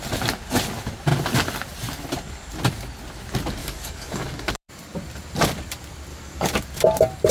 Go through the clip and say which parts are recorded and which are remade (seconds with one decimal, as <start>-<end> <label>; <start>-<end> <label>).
0.0-3.6 recorded; 3.6-4.7 remade; 4.7-6.1 recorded; 6.1-6.6 remade; 6.6-7.3 recorded